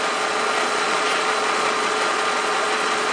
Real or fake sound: fake